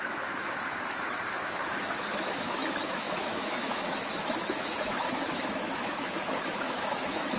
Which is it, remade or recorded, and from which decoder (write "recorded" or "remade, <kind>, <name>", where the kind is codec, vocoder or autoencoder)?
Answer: remade, autoencoder, DAC-VAE